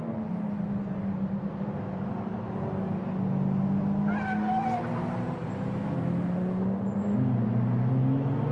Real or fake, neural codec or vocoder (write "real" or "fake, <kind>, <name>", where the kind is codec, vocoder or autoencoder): real